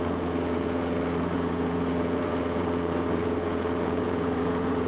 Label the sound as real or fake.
fake